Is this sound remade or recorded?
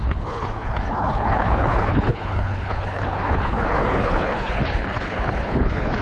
remade